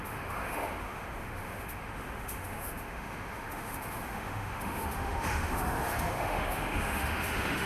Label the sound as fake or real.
fake